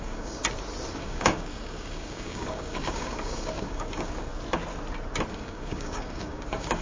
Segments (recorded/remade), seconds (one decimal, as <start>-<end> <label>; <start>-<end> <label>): 0.0-0.4 remade; 0.4-0.9 recorded; 0.9-4.3 remade; 4.3-5.3 recorded; 5.3-6.8 remade